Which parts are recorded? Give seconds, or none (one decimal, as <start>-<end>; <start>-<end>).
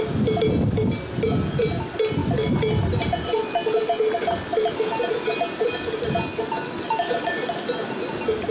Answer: 0.0-8.5